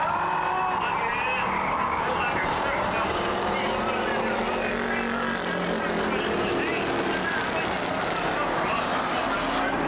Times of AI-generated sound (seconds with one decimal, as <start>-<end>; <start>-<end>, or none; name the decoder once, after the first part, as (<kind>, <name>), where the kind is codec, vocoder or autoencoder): none

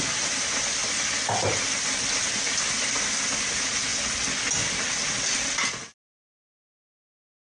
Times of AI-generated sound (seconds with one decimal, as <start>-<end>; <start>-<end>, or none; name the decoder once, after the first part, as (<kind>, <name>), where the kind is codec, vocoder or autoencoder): 0.0-0.8 (vocoder, BigVGAN v2); 3.5-3.9; 6.6-7.5

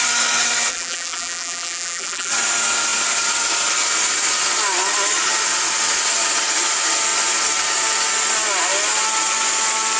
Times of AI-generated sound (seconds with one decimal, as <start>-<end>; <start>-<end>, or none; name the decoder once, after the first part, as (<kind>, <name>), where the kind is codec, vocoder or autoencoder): 0.7-2.3 (vocoder, BigVGAN v2)

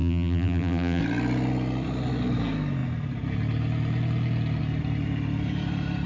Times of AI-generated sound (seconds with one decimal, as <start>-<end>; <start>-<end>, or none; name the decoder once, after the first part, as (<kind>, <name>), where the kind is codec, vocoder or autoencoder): 0.0-1.0 (vocoder, BigVGAN v2)

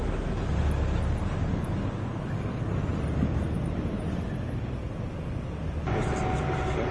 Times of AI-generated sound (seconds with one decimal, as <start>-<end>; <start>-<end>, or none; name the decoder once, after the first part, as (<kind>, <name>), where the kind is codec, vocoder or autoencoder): 2.9-5.8 (vocoder, BigVGAN v2)

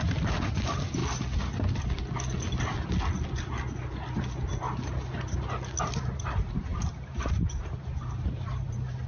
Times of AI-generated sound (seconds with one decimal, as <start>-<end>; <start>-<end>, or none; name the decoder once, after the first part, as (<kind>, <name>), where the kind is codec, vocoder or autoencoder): 0.0-1.0 (vocoder, BigVGAN v2); 5.8-9.1

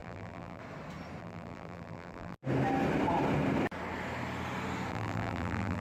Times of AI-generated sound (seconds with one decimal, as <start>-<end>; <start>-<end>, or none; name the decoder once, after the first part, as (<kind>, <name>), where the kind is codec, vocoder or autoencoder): 0.0-0.6 (vocoder, BigVGAN v2); 1.2-2.4; 4.9-5.8